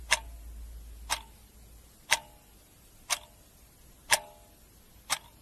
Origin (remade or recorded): recorded